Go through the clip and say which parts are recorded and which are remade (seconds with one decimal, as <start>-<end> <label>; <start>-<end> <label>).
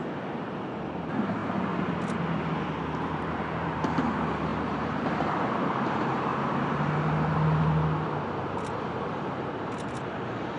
0.0-1.4 remade; 1.4-2.8 recorded; 2.8-6.3 remade; 6.3-8.8 recorded; 8.8-10.6 remade